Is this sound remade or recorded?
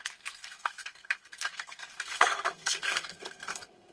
remade